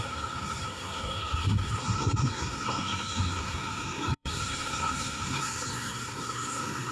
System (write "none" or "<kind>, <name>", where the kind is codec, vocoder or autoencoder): codec, SNAC